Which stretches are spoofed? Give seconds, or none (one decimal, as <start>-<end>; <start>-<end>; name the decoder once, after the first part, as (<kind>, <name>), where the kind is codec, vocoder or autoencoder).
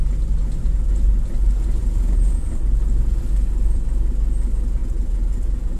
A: 1.8-2.4 (vocoder, Vocos); 4.8-5.8